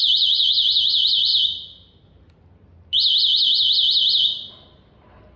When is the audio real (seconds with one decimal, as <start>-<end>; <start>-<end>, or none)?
1.3-4.5